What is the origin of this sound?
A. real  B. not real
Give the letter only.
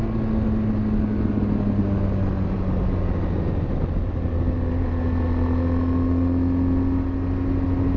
A